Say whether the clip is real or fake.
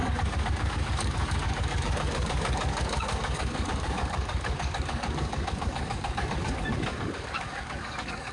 fake